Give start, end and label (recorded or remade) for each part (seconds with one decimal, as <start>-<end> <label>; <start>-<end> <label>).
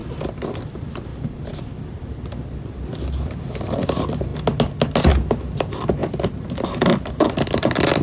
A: 0.0-0.7 recorded; 0.7-1.1 remade; 1.1-3.6 recorded; 3.6-4.3 remade; 4.3-5.5 recorded; 5.5-6.0 remade; 6.0-7.1 recorded; 7.1-8.0 remade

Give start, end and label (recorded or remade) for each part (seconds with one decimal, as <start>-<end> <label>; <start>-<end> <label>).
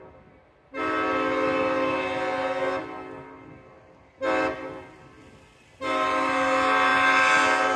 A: 0.0-7.8 recorded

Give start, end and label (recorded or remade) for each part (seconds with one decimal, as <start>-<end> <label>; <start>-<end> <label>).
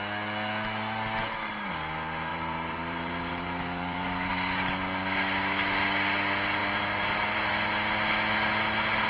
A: 0.0-2.3 recorded; 2.3-4.3 remade; 4.3-6.6 recorded; 6.6-7.5 remade; 7.5-9.1 recorded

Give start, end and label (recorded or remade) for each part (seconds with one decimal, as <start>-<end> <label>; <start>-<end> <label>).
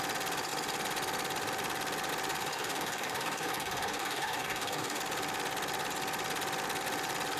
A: 0.0-2.5 recorded; 2.5-5.0 remade; 5.0-7.4 recorded